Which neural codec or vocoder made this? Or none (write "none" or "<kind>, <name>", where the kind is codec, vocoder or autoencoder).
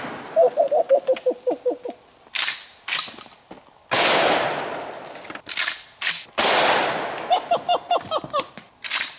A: none